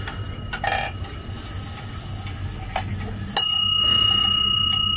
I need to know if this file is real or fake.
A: real